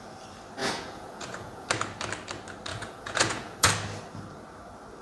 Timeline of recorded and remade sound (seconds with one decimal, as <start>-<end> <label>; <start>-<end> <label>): 0.0-0.6 recorded; 0.6-1.7 remade; 1.7-2.7 recorded; 2.7-3.7 remade; 3.7-5.0 recorded